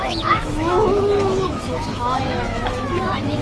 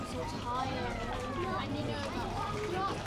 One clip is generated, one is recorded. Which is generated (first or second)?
first